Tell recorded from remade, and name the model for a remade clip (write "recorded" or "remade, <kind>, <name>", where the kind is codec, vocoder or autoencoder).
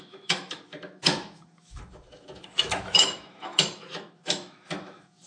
remade, autoencoder, DAC-VAE